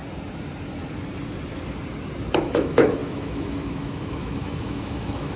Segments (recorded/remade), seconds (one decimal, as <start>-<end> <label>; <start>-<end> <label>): 0.0-2.4 recorded; 2.4-5.4 remade